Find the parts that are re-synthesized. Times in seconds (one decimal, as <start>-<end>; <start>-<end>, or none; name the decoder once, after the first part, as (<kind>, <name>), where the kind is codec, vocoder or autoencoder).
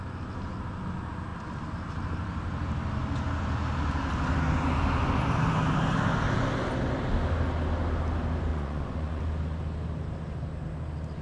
8.5-9.2 (vocoder, Vocos)